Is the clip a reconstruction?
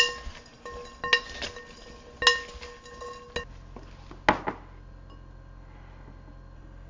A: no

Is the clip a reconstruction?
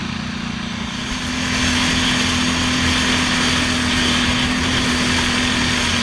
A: no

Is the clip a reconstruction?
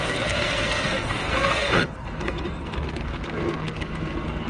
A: yes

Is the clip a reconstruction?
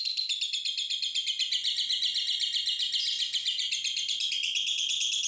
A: no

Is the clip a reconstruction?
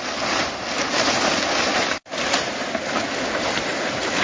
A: no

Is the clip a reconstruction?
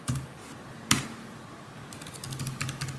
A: no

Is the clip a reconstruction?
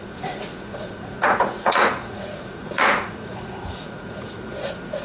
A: yes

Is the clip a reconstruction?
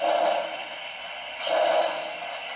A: no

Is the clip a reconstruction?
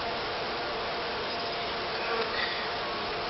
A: no